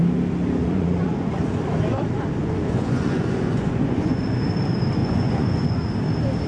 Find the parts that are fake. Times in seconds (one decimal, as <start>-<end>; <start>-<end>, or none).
0.6-1.4; 2.4-4.2; 5.0-5.9